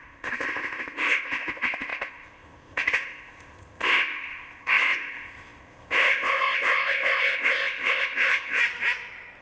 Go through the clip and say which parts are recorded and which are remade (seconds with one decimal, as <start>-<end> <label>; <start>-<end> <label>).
0.0-8.6 remade; 8.6-9.4 recorded